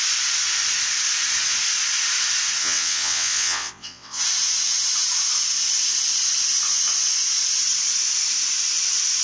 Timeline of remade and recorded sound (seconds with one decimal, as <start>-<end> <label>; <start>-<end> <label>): 0.0-2.6 recorded; 2.6-4.2 remade; 4.2-9.2 recorded